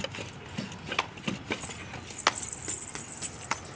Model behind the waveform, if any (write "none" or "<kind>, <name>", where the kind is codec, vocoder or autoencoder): none